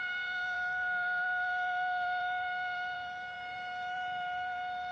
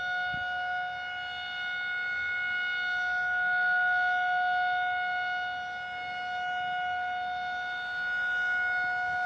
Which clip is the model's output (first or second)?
first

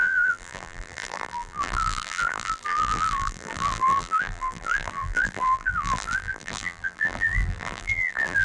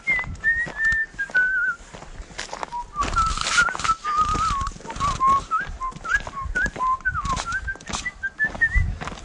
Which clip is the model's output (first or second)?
first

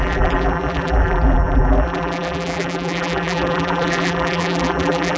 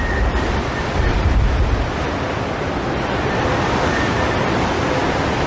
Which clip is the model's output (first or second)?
first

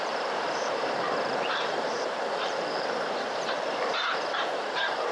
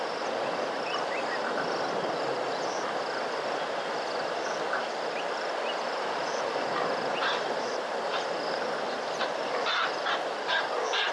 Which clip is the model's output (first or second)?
first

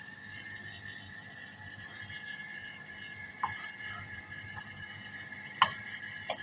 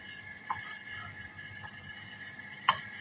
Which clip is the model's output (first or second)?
second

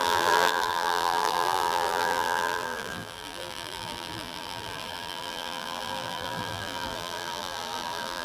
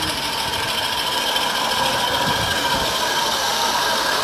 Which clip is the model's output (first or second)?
first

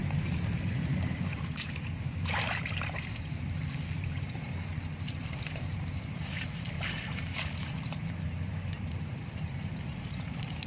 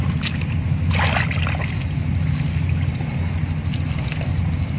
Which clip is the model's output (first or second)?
first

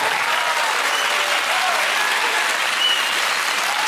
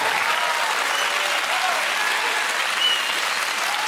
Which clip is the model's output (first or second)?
first